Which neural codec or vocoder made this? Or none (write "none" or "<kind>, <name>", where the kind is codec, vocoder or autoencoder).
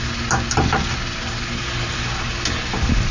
none